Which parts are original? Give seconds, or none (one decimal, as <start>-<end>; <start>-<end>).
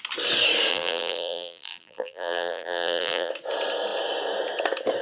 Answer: 0.0-0.7; 3.3-5.0